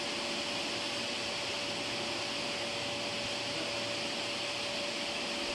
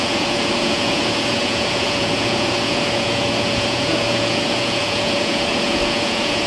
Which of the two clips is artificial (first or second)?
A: second